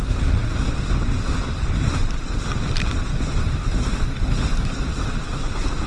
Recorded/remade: remade